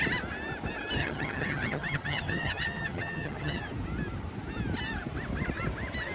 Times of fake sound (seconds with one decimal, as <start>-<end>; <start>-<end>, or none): 1.0-3.6